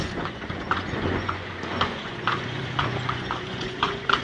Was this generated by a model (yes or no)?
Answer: yes